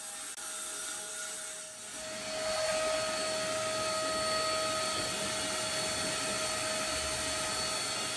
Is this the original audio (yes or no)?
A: yes